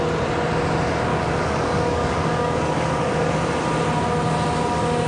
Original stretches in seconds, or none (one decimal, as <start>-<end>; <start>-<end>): 0.0-1.1; 3.3-5.1